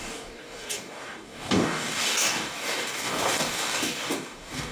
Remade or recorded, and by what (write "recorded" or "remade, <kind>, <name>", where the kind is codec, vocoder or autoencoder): remade, codec, DAC